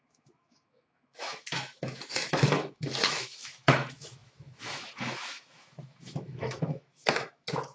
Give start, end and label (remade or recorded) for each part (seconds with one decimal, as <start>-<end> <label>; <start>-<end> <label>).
0.0-7.7 remade